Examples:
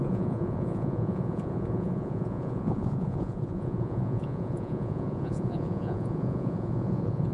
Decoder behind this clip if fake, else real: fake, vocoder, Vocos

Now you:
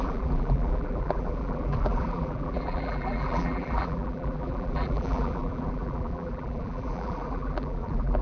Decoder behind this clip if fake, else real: fake, vocoder, BigVGAN v2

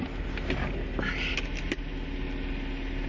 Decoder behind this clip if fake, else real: real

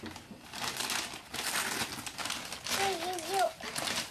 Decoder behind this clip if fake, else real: real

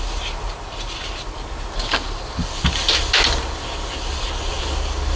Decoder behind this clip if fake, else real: real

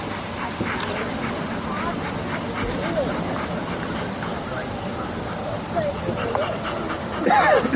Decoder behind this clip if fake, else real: real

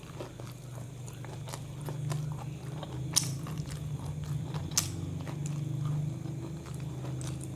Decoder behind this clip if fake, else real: real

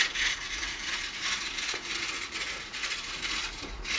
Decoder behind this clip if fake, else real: fake, vocoder, Vocos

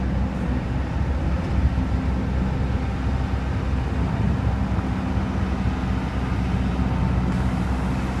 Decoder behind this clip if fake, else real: real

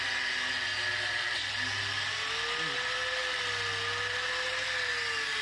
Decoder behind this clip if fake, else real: real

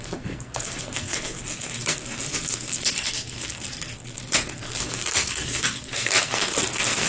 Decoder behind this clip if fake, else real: fake, codec, SNAC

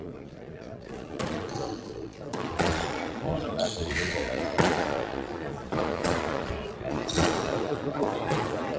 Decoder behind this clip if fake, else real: fake, vocoder, Vocos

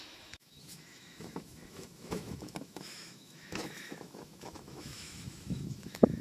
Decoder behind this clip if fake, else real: fake, autoencoder, DAC-VAE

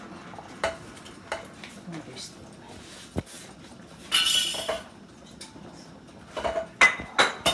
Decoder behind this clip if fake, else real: real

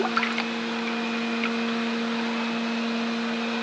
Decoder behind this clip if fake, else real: real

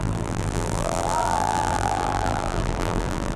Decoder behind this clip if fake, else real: fake, vocoder, BigVGAN v2